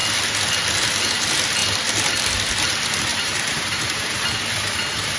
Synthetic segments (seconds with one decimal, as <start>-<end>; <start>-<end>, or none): 3.1-4.2